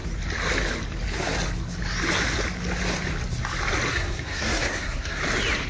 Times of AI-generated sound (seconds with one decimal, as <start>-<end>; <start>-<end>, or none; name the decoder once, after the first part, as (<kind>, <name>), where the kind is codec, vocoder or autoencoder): 3.9-5.2 (codec, SNAC)